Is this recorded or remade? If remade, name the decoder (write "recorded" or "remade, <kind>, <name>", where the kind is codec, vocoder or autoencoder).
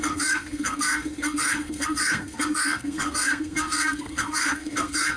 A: remade, codec, SNAC